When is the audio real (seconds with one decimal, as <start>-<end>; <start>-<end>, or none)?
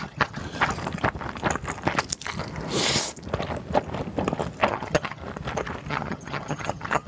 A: 0.4-4.7; 5.2-5.9